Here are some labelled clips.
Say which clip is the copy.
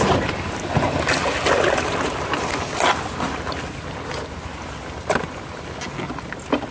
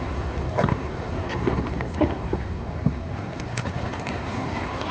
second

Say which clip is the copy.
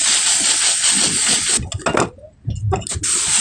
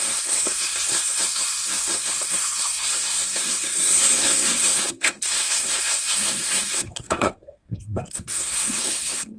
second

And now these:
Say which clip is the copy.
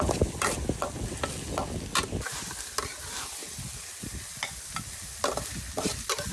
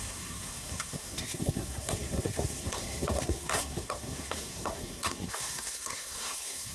second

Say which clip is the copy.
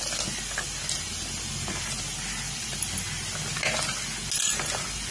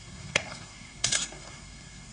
second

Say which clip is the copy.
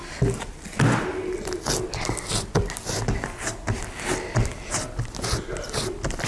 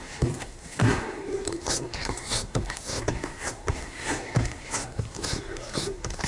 second